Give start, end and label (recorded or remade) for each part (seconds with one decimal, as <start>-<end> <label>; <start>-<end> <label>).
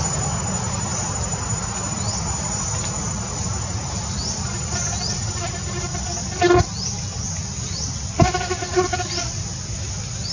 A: 0.0-10.3 recorded